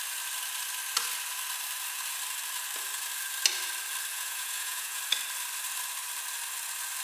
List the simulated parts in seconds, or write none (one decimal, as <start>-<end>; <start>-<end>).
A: 4.1-5.0